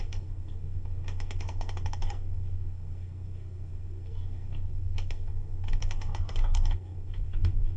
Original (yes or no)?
no